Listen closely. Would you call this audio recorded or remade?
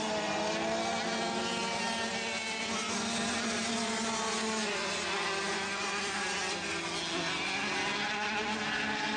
recorded